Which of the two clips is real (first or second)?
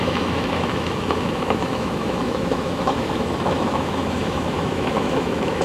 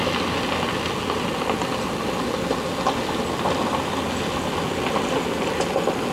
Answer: second